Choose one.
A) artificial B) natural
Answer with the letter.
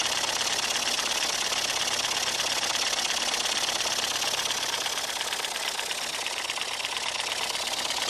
B